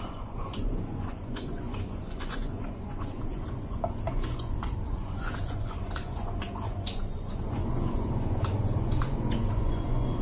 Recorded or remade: remade